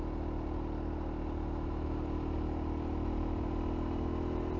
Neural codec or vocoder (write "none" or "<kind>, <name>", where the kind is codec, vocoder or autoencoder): none